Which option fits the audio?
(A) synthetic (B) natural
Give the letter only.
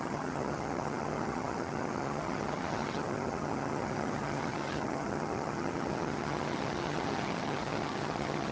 A